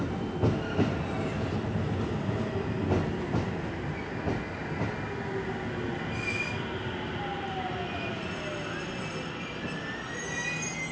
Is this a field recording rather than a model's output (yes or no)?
yes